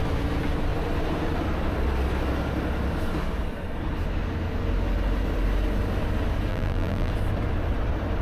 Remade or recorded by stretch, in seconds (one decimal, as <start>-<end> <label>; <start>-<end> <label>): 0.0-6.5 recorded; 6.5-7.1 remade; 7.1-8.2 recorded